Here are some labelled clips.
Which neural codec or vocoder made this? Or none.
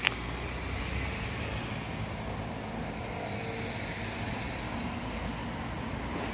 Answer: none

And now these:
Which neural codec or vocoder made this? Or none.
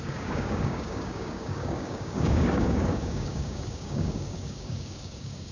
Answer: codec, DAC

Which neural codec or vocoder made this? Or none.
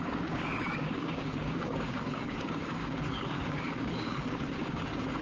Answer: codec, DAC